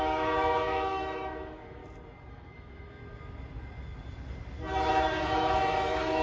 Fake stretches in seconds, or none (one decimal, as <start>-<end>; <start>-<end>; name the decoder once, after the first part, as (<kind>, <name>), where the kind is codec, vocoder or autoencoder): 0.0-1.8 (autoencoder, DAC-VAE); 2.3-3.0; 4.9-6.2